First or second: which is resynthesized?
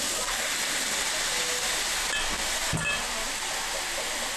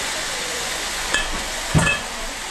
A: second